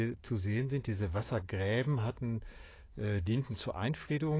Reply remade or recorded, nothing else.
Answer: remade